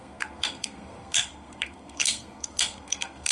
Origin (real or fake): fake